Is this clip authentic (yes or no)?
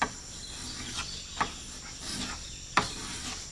yes